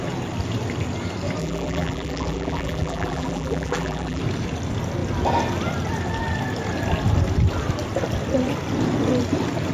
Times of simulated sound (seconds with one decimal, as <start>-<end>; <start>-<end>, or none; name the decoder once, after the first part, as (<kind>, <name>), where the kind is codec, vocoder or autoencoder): 1.4-4.2 (vocoder, BigVGAN v2)